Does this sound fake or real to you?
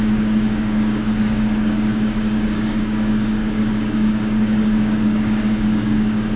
fake